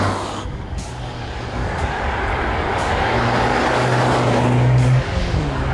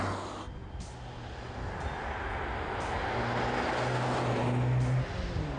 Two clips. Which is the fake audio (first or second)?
first